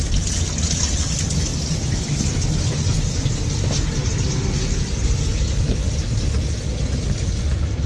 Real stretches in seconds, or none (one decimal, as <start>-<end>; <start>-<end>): 0.0-7.9